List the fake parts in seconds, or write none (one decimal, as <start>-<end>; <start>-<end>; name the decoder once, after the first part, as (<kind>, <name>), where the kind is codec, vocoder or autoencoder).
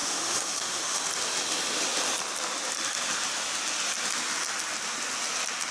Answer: 0.0-1.0 (autoencoder, DAC-VAE)